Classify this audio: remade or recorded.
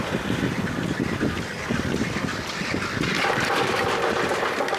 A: recorded